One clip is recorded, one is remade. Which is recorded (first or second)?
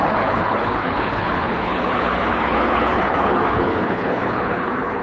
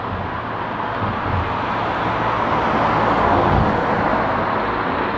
second